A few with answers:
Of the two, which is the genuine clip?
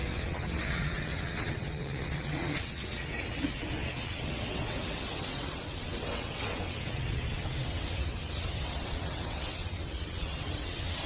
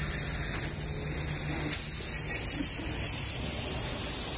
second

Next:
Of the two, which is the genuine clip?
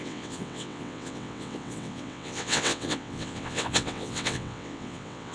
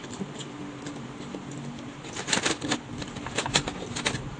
second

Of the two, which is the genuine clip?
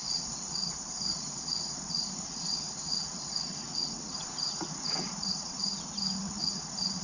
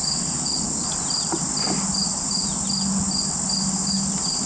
second